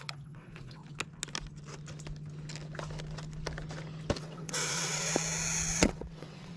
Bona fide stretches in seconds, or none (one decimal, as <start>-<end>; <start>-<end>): 0.8-4.2; 5.1-5.8